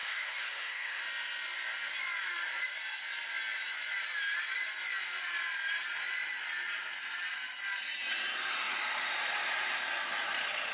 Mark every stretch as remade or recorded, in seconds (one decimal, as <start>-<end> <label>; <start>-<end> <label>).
0.0-1.0 remade; 1.0-10.7 recorded

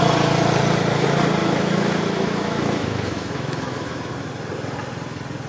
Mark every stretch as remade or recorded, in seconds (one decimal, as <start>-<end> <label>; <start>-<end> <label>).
0.0-1.4 recorded; 1.4-4.1 remade; 4.1-5.5 recorded

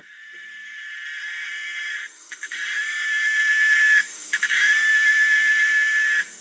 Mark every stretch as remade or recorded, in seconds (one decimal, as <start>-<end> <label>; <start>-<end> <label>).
0.0-6.4 remade

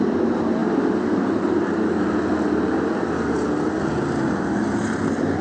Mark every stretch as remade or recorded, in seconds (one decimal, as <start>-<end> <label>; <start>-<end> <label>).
0.0-5.4 recorded

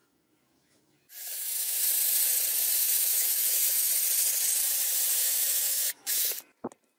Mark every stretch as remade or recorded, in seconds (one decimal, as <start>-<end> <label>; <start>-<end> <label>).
0.0-1.9 remade; 1.9-2.8 recorded; 2.8-3.9 remade; 3.9-5.2 recorded; 5.2-6.3 remade; 6.3-7.0 recorded

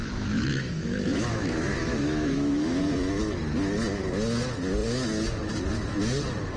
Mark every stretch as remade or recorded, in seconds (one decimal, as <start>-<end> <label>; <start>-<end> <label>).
0.0-2.8 remade; 2.8-6.6 recorded